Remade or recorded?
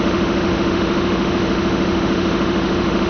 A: remade